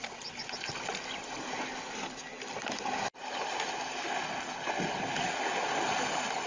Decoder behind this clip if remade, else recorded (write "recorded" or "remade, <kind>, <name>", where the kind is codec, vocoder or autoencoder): recorded